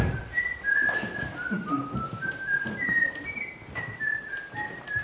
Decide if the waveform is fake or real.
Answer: real